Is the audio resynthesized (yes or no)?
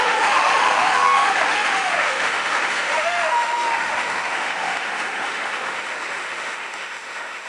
yes